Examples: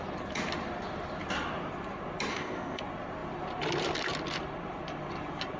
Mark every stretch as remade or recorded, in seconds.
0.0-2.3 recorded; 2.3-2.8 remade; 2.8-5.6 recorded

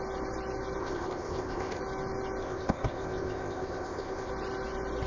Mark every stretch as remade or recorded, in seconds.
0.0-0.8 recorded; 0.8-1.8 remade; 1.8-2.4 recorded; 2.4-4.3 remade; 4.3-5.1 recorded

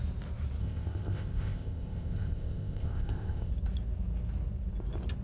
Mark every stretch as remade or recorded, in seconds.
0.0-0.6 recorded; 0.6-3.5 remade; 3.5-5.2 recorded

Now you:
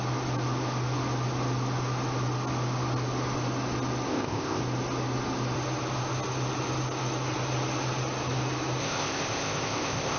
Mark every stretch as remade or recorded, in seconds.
0.0-4.1 recorded; 4.1-4.6 remade; 4.6-8.8 recorded; 8.8-10.2 remade